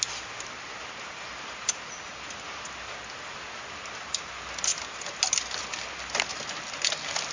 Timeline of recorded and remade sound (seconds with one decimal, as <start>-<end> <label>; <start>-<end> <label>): 0.0-7.3 recorded